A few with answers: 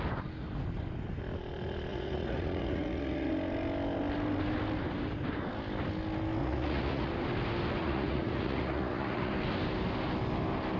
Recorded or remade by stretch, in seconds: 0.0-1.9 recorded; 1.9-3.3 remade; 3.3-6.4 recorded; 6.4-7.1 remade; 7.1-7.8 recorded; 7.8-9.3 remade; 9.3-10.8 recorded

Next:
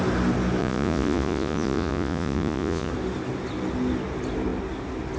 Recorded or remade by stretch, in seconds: 0.0-0.6 recorded; 0.6-2.9 remade; 2.9-5.2 recorded

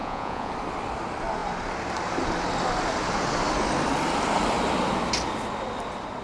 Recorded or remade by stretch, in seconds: 0.0-0.5 remade; 0.5-6.2 recorded

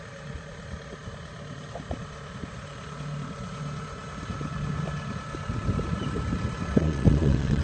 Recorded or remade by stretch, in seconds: 0.0-6.8 recorded; 6.8-7.6 remade

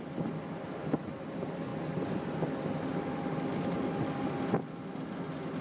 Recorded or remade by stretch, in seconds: 0.0-5.6 recorded

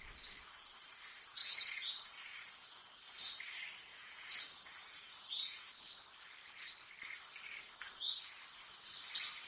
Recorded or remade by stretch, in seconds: 0.0-1.4 recorded; 1.4-2.9 remade; 2.9-3.9 recorded; 3.9-5.6 remade; 5.6-9.5 recorded

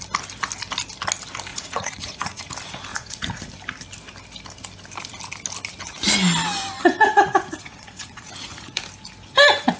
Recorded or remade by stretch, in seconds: 0.0-1.5 recorded; 1.5-2.5 remade; 2.5-2.9 recorded; 2.9-3.5 remade; 3.5-6.8 recorded; 6.8-8.8 remade; 8.8-9.8 recorded